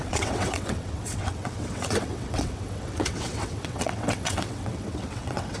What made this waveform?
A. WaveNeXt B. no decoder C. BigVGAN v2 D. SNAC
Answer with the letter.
A